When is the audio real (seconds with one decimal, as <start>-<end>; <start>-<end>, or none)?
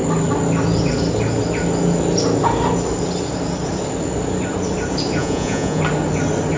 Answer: 0.0-5.2; 5.8-6.6